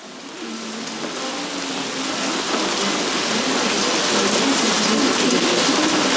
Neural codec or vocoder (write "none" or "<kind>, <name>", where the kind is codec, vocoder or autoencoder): none